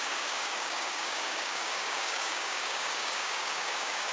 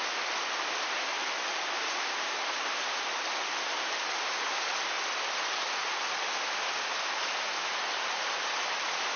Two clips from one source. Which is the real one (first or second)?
second